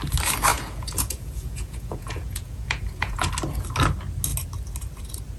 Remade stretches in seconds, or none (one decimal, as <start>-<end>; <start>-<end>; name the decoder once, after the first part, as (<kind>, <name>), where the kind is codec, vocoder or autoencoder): 0.5-3.3 (vocoder, Vocos)